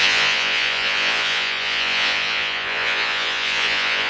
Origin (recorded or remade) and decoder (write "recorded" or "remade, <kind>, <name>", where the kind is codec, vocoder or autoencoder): remade, vocoder, Vocos